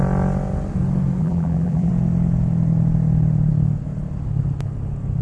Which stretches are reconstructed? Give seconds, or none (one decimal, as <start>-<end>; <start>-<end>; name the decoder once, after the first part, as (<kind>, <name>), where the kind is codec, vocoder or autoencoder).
1.2-1.9 (vocoder, BigVGAN v2)